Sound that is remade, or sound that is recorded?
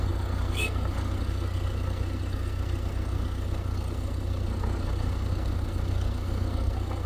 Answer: remade